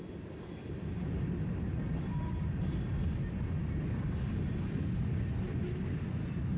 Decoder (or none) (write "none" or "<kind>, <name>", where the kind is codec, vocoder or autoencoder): none